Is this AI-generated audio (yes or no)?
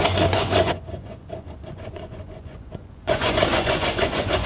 yes